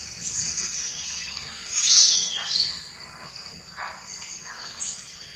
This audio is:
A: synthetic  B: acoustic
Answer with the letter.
A